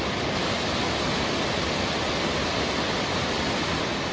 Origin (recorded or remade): recorded